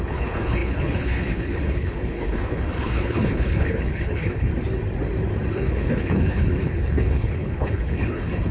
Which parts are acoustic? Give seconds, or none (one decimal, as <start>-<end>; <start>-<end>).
4.5-5.5